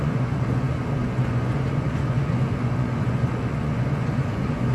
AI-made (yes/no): yes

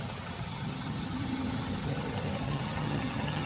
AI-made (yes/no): yes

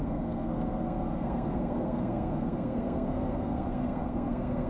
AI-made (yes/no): yes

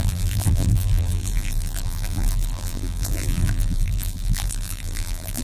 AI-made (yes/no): yes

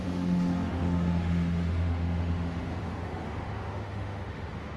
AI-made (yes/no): yes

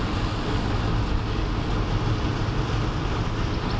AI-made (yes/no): no